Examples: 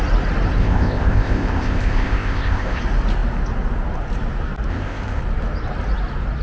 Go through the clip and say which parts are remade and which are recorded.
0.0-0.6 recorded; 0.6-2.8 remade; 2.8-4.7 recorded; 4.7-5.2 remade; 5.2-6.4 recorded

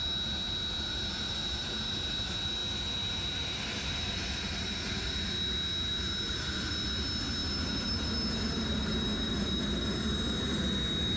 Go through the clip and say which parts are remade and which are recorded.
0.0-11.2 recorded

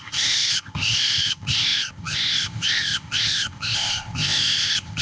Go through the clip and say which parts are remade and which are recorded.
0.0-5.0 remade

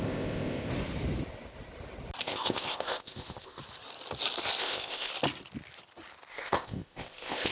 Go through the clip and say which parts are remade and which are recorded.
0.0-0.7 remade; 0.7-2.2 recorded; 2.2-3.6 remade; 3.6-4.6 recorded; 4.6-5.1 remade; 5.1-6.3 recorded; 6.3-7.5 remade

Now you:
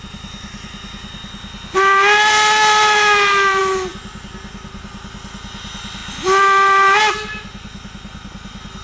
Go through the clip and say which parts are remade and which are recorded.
0.0-8.8 recorded